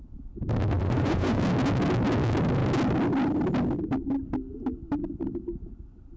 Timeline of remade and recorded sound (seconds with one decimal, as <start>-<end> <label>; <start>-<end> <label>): 0.0-0.8 recorded; 0.8-1.4 remade; 1.4-6.2 recorded